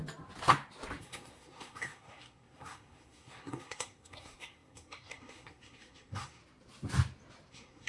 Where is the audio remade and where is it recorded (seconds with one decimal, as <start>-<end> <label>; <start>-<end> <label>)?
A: 0.0-1.0 recorded; 1.0-6.4 remade; 6.4-7.5 recorded; 7.5-7.9 remade